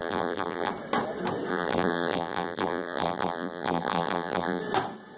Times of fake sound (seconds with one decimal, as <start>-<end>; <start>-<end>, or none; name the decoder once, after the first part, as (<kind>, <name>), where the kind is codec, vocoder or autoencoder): 0.0-0.7 (vocoder, BigVGAN v2); 1.5-4.6